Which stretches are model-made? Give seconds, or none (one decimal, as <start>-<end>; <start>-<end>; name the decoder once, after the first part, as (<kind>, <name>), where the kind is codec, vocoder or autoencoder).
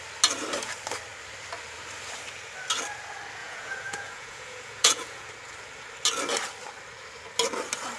3.4-5.3 (vocoder, Vocos)